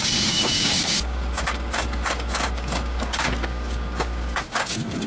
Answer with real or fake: fake